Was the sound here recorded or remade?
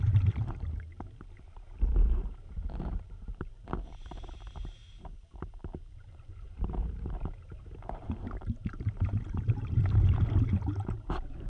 remade